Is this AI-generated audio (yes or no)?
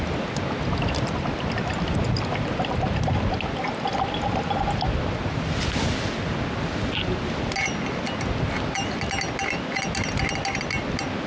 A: no